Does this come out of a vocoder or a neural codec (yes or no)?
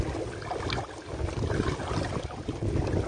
no